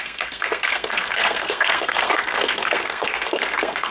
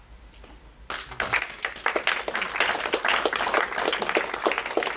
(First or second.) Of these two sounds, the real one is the second